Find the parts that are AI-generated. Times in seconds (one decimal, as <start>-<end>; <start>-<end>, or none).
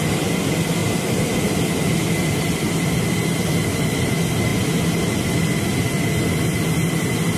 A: none